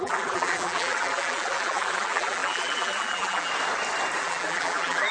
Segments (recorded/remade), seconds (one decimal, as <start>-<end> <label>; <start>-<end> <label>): 0.0-3.5 remade; 3.5-4.2 recorded; 4.2-5.1 remade